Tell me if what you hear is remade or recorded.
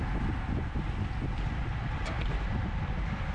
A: remade